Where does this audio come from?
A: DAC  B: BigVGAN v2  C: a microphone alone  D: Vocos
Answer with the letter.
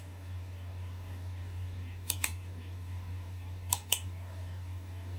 A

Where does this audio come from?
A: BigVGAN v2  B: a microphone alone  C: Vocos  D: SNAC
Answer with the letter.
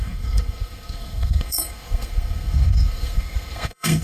D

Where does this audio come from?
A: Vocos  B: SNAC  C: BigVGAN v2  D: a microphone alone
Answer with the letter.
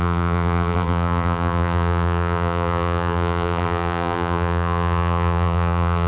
C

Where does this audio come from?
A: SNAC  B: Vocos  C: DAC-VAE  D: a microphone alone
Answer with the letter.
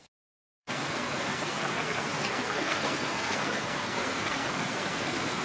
A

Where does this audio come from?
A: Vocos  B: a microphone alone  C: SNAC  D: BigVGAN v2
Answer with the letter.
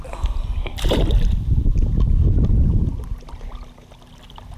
B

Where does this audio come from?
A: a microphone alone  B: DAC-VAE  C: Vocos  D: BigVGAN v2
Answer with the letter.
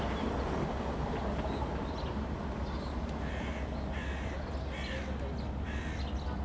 A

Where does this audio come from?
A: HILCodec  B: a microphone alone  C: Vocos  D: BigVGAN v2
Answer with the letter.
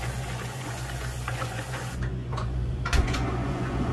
C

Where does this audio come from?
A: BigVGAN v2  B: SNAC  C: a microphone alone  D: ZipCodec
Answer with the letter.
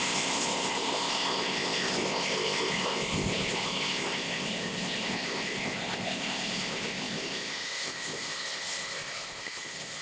D